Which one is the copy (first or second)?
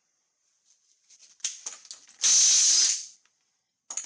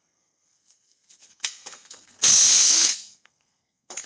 second